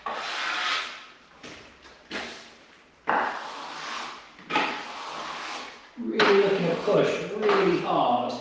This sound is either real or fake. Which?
real